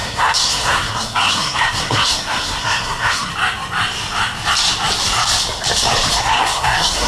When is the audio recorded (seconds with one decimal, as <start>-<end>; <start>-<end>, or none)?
3.3-6.2